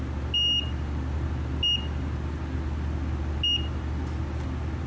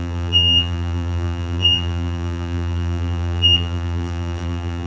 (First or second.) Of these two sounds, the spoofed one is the second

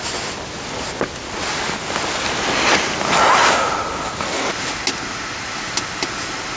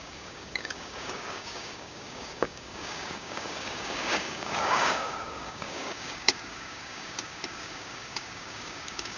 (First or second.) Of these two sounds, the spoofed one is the second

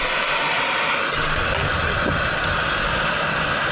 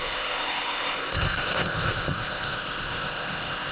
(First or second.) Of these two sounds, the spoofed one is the second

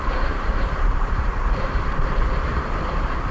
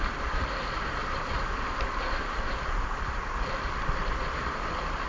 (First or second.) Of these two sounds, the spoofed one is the first